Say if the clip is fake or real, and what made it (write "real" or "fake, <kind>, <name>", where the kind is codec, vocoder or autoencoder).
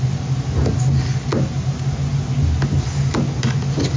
real